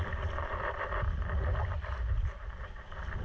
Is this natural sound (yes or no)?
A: yes